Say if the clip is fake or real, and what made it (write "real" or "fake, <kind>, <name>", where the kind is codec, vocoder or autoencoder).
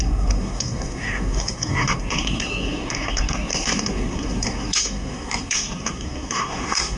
fake, codec, SNAC